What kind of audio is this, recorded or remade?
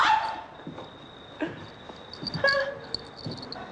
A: recorded